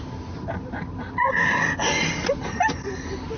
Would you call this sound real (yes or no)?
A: yes